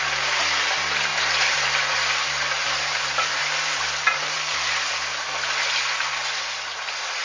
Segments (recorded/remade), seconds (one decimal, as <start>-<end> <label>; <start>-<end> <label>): 0.0-1.1 recorded; 1.1-2.2 remade; 2.2-2.6 recorded; 2.6-6.1 remade; 6.1-7.2 recorded